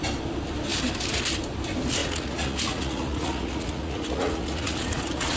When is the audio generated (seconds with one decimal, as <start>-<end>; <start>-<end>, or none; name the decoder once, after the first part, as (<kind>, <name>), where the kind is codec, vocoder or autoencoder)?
2.0-5.4 (vocoder, Vocos)